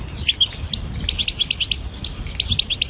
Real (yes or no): yes